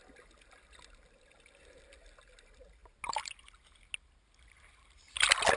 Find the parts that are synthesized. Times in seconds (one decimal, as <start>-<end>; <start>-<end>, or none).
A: none

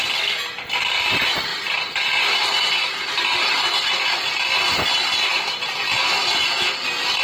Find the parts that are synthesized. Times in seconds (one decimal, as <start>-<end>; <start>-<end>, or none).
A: 1.5-4.3; 5.3-5.8

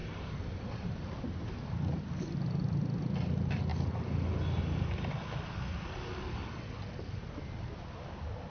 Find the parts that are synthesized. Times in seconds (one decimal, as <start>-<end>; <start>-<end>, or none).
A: 0.0-0.6

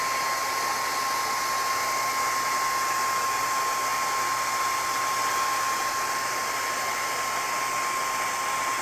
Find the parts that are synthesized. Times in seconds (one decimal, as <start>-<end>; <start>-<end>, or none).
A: none

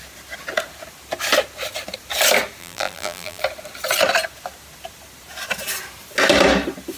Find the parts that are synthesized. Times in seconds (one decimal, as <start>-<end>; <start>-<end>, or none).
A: 2.6-3.4

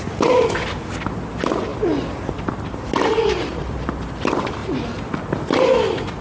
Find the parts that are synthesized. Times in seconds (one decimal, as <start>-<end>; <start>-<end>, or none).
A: 1.7-4.1